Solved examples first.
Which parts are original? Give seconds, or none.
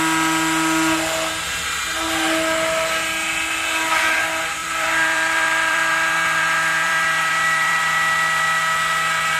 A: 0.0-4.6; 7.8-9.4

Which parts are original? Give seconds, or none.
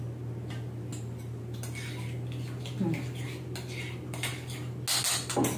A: 0.0-5.6